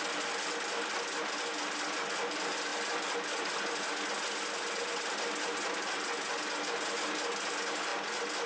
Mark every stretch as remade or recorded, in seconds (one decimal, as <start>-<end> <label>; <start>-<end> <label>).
0.0-8.5 recorded